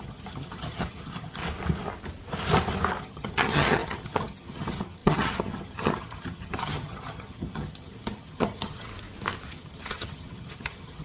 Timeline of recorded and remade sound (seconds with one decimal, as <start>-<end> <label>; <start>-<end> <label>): 0.0-1.4 remade; 1.4-3.0 recorded; 3.0-8.9 remade; 8.9-9.5 recorded; 9.5-11.0 remade